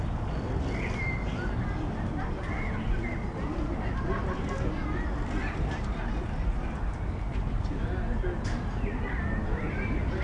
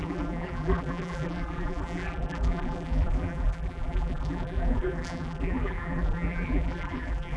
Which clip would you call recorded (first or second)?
first